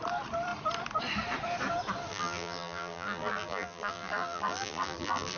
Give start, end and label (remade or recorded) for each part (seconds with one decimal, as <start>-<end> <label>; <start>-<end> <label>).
0.0-2.1 recorded; 2.1-5.4 remade